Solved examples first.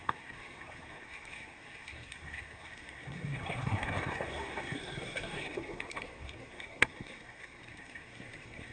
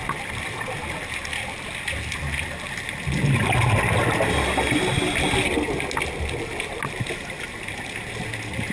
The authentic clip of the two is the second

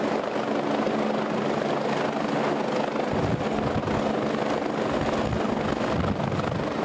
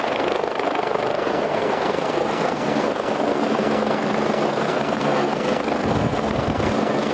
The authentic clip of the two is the first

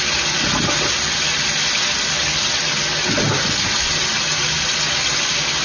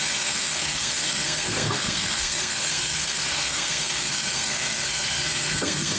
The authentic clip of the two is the first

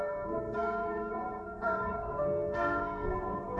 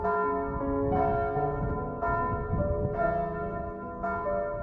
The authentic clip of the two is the second